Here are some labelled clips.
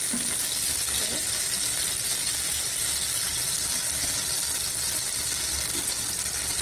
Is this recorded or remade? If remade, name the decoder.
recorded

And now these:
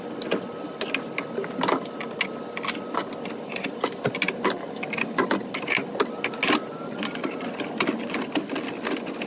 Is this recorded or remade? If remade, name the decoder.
recorded